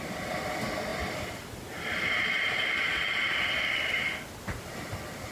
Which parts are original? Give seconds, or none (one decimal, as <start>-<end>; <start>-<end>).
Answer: 0.0-0.9; 4.1-5.3